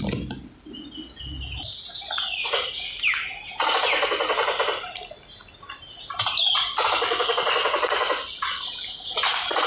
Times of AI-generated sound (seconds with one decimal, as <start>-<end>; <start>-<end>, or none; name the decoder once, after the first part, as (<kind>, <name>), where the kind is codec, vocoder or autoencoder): none